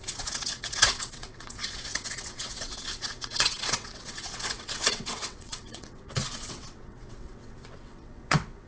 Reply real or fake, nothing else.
fake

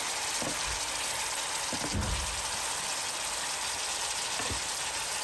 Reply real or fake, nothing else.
real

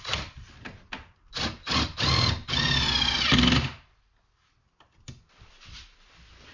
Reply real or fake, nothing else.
real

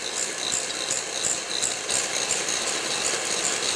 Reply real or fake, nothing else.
real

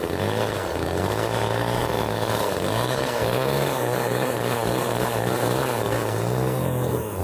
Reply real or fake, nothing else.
fake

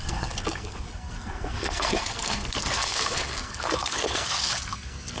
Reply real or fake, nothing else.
fake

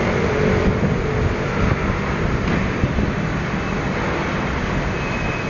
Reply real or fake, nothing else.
real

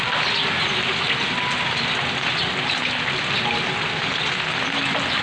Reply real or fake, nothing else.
real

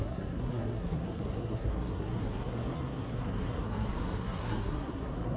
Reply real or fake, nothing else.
fake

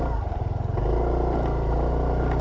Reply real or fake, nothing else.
real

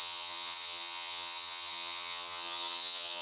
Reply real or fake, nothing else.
fake